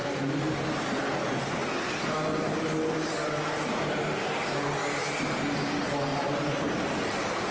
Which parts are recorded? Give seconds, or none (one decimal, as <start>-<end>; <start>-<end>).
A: 0.0-6.1; 6.7-7.5

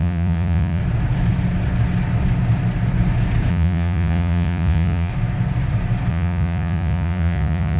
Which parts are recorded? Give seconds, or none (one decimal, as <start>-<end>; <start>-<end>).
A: 0.8-3.5; 5.1-6.1

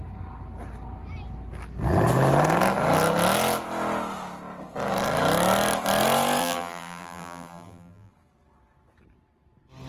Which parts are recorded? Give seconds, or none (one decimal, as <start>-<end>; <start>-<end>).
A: 0.0-6.4; 8.1-9.9

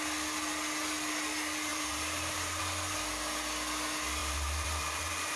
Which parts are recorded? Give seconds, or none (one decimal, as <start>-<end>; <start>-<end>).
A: 0.0-1.7; 2.6-4.2